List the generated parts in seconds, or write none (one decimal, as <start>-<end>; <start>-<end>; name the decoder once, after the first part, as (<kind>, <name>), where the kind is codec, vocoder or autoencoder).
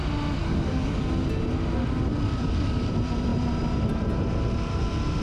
0.4-1.1 (codec, DAC); 2.3-2.9